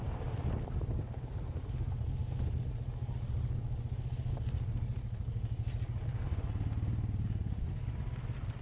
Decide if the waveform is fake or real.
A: real